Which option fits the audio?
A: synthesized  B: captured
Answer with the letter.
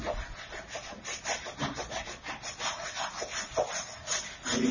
B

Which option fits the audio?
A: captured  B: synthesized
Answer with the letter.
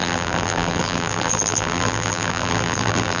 B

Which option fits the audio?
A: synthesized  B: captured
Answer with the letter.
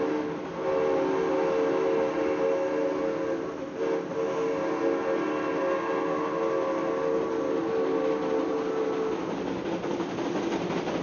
B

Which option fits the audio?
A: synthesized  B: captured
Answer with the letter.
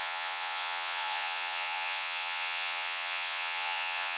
A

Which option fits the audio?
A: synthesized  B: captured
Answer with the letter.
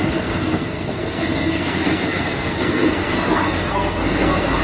A